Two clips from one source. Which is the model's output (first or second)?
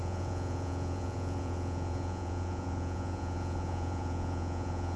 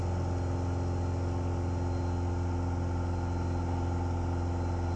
first